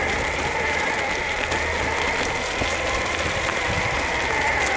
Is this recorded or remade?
recorded